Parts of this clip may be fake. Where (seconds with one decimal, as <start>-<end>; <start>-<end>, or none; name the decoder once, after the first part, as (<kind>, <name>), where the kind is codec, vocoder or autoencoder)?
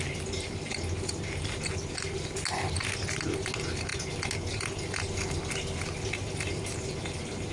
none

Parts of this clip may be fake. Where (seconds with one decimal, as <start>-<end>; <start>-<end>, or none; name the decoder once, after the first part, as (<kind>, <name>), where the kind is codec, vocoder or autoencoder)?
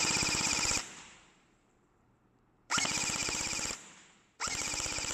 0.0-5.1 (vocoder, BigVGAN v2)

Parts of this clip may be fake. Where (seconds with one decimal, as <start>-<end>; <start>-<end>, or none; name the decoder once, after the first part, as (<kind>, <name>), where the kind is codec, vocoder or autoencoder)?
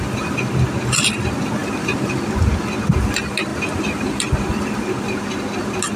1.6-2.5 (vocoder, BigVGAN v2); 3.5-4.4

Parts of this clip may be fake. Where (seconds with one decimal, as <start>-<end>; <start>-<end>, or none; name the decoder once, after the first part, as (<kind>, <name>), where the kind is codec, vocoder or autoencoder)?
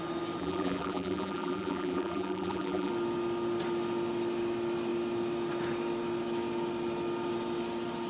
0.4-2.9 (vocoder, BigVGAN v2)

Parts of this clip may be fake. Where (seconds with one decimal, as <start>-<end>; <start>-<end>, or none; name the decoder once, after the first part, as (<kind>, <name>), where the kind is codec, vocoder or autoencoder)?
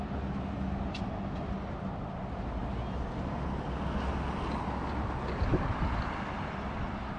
5.5-6.0 (vocoder, BigVGAN v2)